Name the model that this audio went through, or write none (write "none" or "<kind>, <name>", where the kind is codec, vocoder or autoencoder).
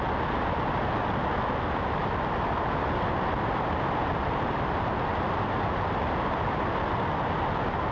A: none